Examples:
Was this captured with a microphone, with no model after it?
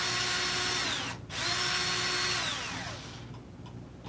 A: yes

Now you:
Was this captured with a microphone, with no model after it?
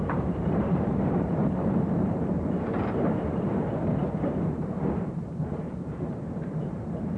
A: no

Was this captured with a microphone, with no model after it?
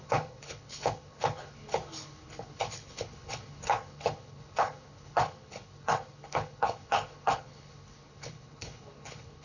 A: no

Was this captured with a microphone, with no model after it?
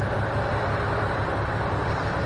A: no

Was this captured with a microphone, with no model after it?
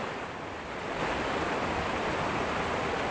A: yes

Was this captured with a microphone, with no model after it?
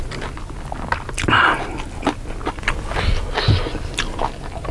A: yes